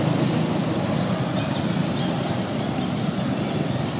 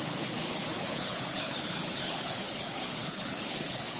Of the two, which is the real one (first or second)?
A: first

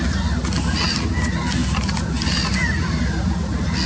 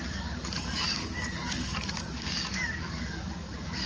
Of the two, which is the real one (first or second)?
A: first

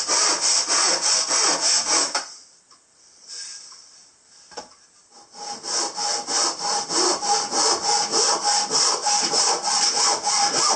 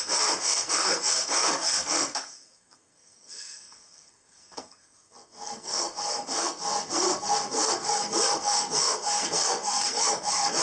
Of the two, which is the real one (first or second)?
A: first